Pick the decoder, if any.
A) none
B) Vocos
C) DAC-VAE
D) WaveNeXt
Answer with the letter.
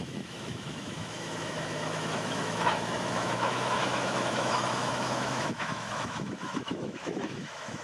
C